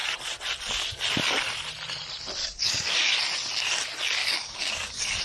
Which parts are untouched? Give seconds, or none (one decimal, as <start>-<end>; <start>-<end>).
0.0-2.4; 3.2-4.2